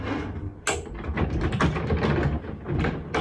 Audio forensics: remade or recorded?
recorded